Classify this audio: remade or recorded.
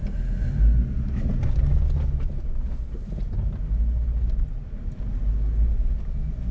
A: recorded